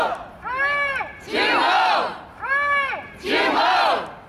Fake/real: real